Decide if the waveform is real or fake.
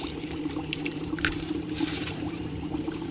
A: fake